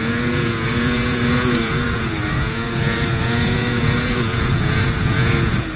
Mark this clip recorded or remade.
remade